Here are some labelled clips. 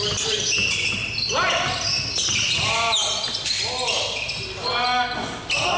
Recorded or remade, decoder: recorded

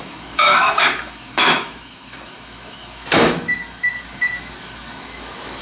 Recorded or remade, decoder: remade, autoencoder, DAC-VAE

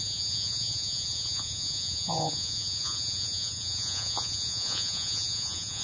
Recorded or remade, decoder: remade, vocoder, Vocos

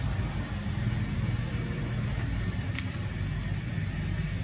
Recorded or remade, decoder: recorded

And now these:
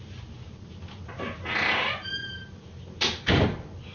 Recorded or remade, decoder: recorded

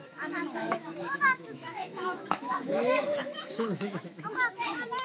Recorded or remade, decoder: remade, autoencoder, DAC-VAE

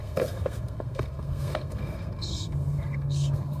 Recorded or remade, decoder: remade, codec, SNAC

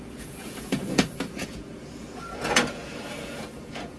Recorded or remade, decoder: remade, vocoder, Vocos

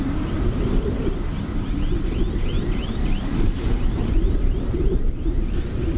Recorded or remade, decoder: recorded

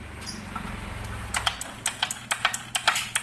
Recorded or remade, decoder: recorded